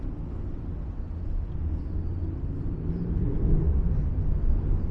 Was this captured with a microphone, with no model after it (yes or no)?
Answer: yes